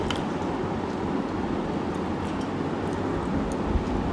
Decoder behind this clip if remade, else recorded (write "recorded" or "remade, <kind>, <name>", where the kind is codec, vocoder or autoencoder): recorded